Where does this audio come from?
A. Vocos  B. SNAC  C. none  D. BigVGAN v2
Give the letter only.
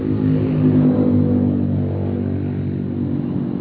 C